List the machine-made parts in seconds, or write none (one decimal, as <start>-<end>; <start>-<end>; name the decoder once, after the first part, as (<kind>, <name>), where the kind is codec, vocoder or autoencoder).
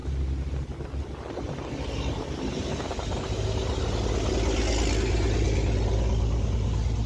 none